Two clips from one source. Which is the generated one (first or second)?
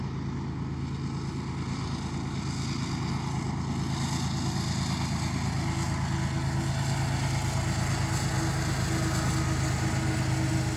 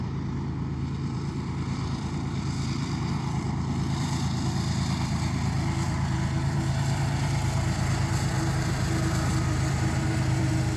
second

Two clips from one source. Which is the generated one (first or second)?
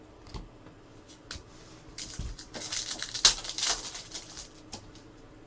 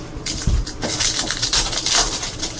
second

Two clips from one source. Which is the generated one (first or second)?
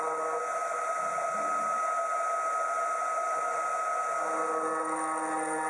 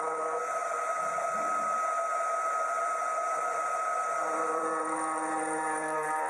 second